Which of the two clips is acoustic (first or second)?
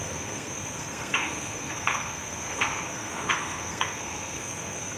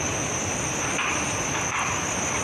second